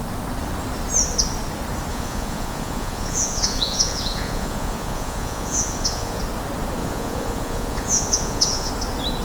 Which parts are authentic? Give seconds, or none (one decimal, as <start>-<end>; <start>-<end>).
0.0-1.9; 6.2-6.8; 8.7-9.2